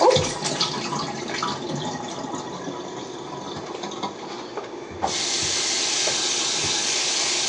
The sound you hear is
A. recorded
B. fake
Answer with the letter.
A